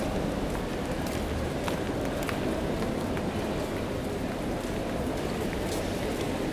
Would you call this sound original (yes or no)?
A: yes